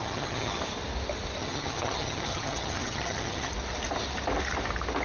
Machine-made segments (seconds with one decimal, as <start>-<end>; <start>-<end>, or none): 0.0-0.6; 1.4-3.5